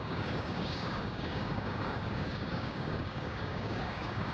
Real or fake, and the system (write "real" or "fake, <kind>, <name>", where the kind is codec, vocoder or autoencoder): fake, codec, DAC